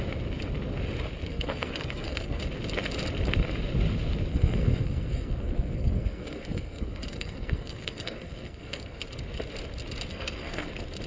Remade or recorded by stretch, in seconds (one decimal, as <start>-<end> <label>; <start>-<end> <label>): 0.0-1.3 recorded; 1.3-2.4 remade; 2.4-4.3 recorded; 4.3-9.0 remade; 9.0-10.1 recorded; 10.1-10.7 remade; 10.7-11.1 recorded